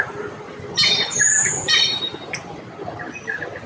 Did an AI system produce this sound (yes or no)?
no